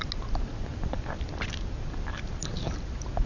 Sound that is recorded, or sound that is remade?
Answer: recorded